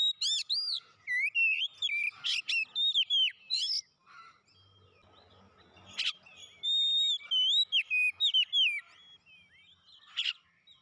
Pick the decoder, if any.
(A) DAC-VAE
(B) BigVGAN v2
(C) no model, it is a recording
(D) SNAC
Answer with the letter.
C